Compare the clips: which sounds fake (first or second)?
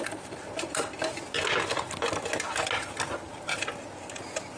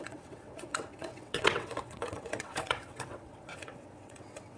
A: second